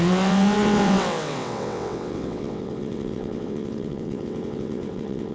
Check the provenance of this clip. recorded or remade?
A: remade